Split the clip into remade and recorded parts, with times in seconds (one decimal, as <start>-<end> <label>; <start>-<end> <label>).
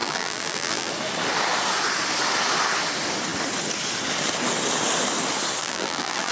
0.0-0.9 remade; 0.9-5.6 recorded; 5.6-6.3 remade